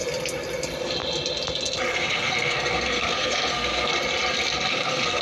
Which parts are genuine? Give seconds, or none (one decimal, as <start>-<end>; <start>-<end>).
0.0-1.9; 3.9-4.7